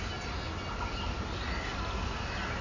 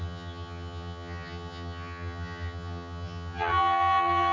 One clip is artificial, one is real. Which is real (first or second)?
first